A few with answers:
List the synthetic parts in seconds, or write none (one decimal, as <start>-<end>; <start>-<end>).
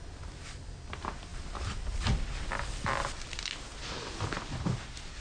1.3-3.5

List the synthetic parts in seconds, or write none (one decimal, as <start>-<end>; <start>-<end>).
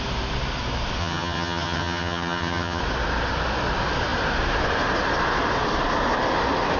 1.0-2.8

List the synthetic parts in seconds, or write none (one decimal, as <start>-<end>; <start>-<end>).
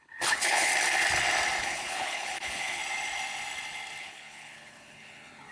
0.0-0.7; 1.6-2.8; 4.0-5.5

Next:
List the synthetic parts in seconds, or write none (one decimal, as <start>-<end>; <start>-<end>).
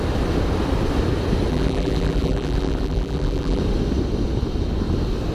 1.5-3.6